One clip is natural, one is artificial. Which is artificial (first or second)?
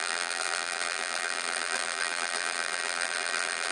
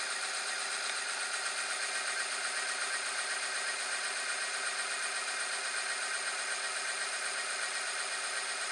first